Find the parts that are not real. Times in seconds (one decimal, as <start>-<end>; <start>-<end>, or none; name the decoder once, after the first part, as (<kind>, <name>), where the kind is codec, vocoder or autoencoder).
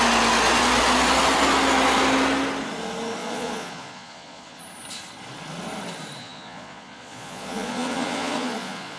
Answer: 3.2-4.6 (vocoder, Vocos); 6.2-9.0